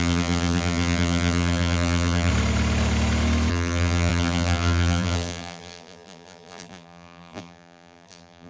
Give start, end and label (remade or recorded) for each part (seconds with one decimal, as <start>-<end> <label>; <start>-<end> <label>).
0.0-2.3 remade; 2.3-3.5 recorded; 3.5-8.5 remade